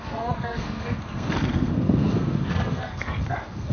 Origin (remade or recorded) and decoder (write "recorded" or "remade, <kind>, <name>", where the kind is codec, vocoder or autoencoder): remade, codec, SNAC